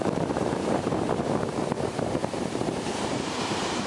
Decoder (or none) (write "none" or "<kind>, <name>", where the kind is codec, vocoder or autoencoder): vocoder, BigVGAN v2